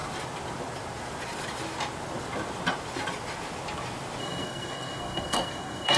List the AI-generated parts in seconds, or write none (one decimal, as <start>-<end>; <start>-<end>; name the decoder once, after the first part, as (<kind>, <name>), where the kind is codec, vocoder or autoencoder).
4.2-6.0 (codec, SNAC)